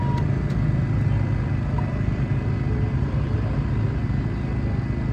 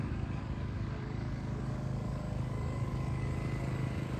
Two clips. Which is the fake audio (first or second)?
second